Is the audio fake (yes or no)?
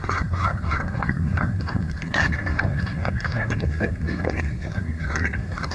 yes